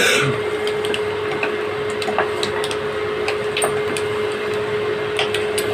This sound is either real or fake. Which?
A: real